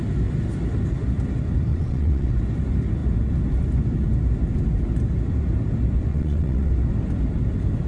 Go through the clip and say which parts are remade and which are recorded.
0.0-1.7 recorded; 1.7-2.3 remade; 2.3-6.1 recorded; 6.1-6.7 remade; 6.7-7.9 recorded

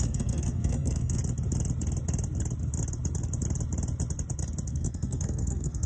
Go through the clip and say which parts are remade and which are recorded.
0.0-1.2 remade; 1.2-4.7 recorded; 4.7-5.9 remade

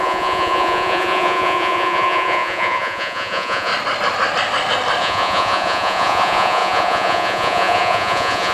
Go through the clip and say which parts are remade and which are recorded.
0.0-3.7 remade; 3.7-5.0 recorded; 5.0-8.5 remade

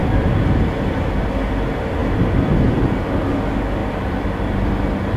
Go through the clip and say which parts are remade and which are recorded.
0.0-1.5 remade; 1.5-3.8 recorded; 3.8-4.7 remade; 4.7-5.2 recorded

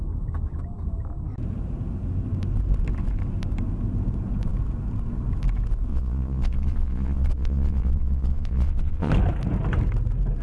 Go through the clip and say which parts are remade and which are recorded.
0.0-5.9 recorded; 5.9-9.1 remade; 9.1-10.4 recorded

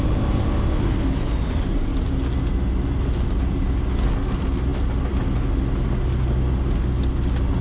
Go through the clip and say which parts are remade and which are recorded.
0.0-7.6 recorded

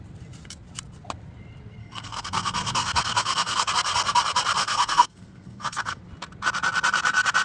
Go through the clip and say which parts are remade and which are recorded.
0.0-1.8 recorded; 1.8-3.7 remade; 3.7-4.6 recorded; 4.6-6.0 remade; 6.0-7.4 recorded

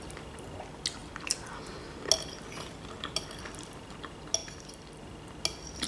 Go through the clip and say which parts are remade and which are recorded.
0.0-5.9 recorded